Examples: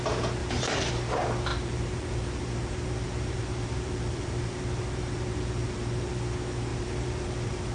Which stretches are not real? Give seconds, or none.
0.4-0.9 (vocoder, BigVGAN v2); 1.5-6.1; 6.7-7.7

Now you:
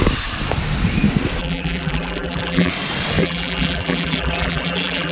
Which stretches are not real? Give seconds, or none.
1.4-2.7 (vocoder, BigVGAN v2); 3.2-5.1

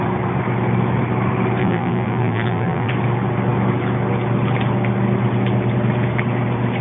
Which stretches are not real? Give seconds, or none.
1.6-2.9 (vocoder, BigVGAN v2)